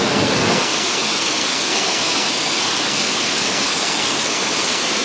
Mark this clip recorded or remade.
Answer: remade